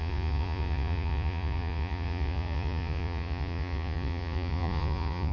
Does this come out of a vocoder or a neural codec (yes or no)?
yes